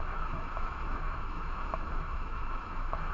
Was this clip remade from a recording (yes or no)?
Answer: yes